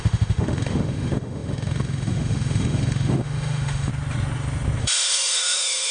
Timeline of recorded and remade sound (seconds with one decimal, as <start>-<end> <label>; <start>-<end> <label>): 0.0-3.9 remade; 3.9-4.8 recorded; 4.8-5.9 remade